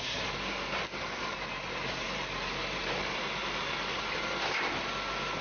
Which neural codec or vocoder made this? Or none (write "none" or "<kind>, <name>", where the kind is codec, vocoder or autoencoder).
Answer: none